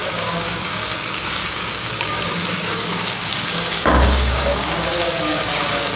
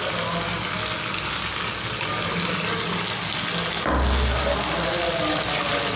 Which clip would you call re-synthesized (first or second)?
first